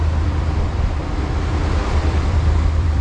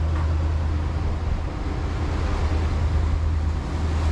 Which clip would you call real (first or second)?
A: second